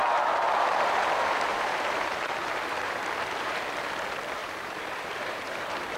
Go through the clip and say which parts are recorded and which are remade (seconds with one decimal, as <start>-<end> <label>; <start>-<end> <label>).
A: 0.0-3.6 remade; 3.6-4.4 recorded; 4.4-6.0 remade